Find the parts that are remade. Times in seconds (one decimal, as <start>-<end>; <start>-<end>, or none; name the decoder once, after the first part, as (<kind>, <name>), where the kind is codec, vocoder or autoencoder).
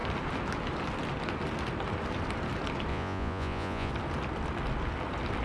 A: 2.9-3.9 (vocoder, Vocos)